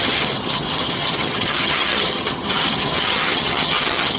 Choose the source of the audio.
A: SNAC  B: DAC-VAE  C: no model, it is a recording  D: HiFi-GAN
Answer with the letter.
D